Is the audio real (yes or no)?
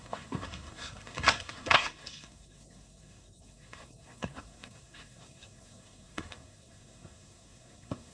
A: no